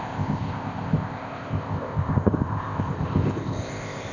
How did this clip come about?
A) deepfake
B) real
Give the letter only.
A